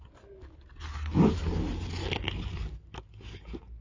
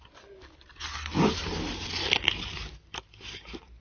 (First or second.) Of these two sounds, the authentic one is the first